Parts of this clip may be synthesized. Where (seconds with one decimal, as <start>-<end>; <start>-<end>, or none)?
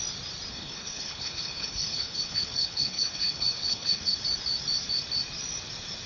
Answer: 0.5-4.2